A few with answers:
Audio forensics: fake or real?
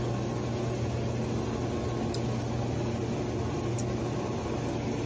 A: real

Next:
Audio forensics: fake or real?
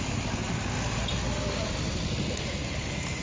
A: real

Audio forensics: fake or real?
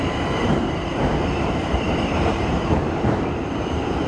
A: fake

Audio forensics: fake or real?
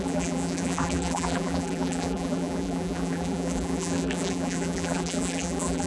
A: fake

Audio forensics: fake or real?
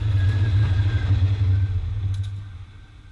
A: real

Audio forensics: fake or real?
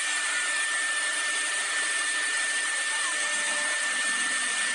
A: fake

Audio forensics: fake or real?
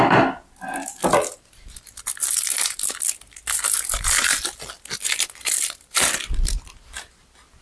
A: real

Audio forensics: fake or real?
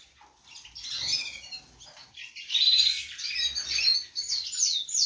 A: real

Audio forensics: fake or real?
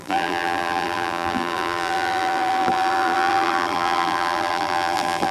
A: fake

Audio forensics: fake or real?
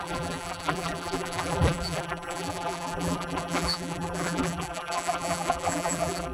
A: fake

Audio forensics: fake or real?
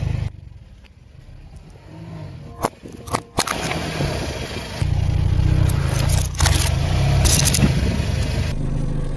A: real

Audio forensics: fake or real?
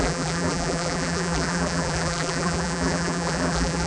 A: fake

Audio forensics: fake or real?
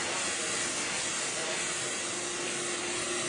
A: real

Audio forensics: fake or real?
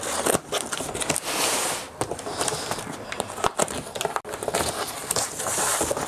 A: real